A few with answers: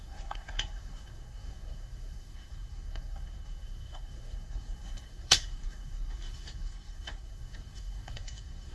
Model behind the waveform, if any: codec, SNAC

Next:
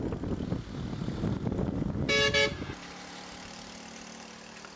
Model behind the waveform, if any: none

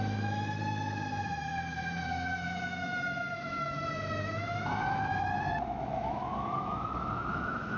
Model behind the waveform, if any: autoencoder, DAC-VAE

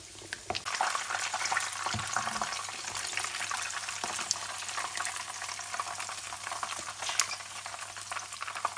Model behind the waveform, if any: none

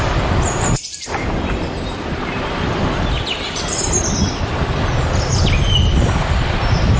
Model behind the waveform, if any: vocoder, BigVGAN v2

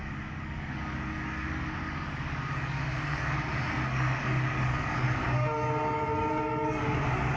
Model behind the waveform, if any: codec, DAC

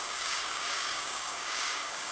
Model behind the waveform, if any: codec, DAC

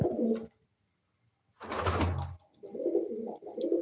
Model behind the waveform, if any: none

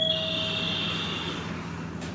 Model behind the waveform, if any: none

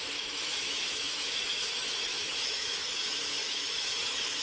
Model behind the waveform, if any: autoencoder, DAC-VAE